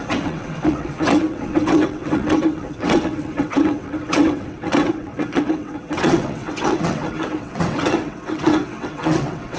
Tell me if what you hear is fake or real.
fake